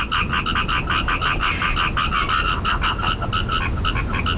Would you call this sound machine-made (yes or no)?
no